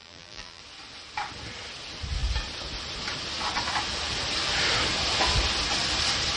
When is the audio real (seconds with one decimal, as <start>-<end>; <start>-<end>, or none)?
0.6-6.4